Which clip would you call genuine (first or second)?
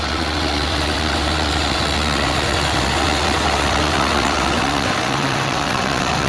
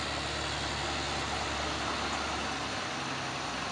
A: second